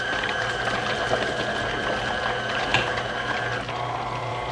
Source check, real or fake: real